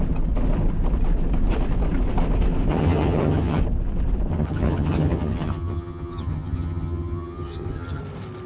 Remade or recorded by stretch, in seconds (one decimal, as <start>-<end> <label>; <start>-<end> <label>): 0.0-2.7 recorded; 2.7-3.6 remade; 3.6-4.3 recorded; 4.3-8.0 remade; 8.0-8.5 recorded